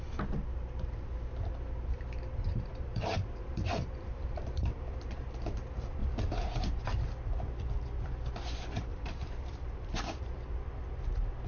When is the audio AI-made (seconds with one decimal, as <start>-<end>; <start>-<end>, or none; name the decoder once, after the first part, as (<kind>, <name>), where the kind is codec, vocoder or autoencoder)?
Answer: 2.5-5.2 (vocoder, BigVGAN v2); 6.0-6.5; 8.9-10.2